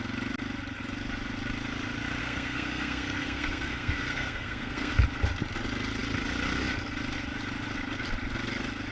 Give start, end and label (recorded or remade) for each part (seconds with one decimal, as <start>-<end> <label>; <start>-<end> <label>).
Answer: 0.0-2.2 recorded; 2.2-4.9 remade; 4.9-8.9 recorded